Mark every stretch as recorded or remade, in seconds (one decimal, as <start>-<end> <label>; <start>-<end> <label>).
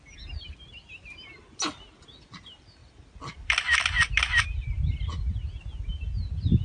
0.0-6.6 recorded